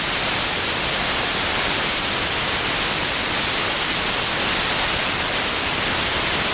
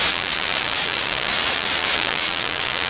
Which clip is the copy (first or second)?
second